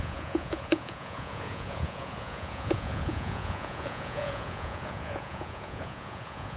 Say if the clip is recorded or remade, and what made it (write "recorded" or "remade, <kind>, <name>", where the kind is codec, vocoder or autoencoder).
remade, vocoder, Vocos